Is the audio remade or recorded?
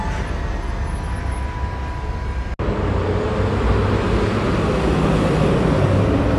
recorded